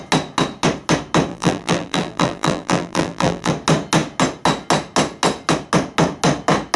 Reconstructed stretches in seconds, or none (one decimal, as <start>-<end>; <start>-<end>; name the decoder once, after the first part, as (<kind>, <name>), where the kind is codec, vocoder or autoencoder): 1.3-3.5 (vocoder, BigVGAN v2)